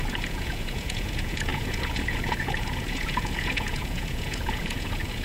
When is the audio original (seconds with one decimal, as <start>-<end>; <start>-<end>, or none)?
none